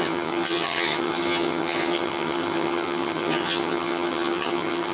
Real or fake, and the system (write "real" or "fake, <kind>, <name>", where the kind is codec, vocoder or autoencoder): fake, vocoder, HiFi-GAN